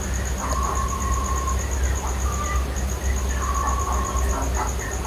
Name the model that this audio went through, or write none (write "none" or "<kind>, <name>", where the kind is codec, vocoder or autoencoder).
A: none